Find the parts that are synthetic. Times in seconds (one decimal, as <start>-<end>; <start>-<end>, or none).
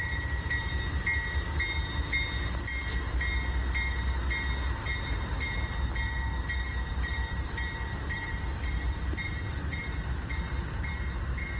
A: 6.9-11.6